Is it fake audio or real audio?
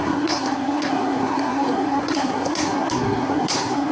fake